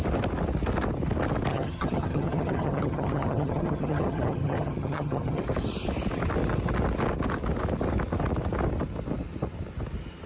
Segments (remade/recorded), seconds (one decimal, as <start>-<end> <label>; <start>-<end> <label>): 0.0-1.5 recorded; 1.5-5.4 remade; 5.4-10.3 recorded